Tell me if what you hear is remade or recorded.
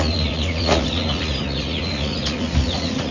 remade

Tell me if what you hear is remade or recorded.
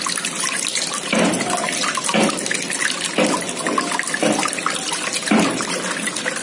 recorded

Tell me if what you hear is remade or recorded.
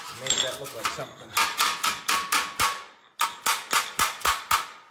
recorded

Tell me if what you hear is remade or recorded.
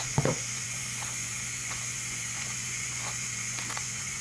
remade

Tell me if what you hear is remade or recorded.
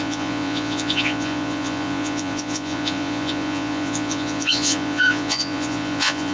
remade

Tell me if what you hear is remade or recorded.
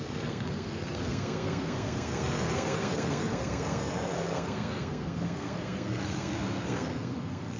remade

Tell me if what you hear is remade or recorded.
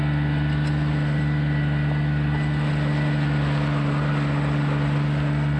recorded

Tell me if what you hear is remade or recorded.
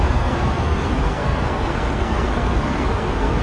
remade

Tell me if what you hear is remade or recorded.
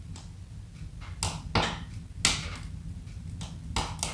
recorded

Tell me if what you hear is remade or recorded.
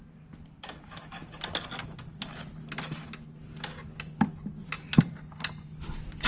recorded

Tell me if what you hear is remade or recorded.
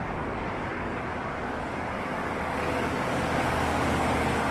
remade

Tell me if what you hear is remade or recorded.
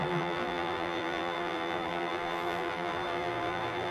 remade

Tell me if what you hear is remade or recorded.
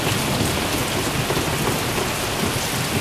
recorded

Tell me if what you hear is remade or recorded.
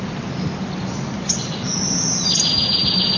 recorded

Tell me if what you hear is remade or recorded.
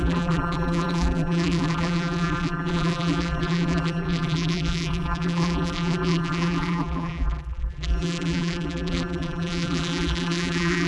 remade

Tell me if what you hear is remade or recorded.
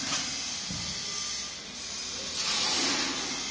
recorded